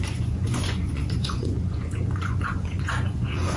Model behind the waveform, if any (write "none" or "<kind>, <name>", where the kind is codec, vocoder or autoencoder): vocoder, Vocos